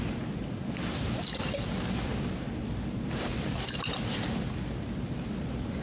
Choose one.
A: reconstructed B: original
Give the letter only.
B